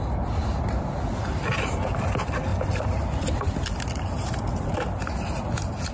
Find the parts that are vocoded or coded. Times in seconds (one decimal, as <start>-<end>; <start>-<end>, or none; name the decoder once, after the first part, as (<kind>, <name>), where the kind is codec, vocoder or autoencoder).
none